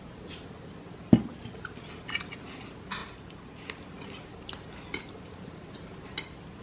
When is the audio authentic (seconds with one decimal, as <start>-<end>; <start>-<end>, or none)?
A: 0.0-3.0; 3.7-6.6